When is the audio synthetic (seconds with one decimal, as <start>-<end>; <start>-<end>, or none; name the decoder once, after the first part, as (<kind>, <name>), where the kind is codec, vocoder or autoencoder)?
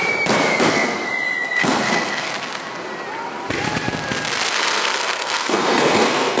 0.6-1.1 (codec, SNAC); 1.6-2.3; 4.5-6.4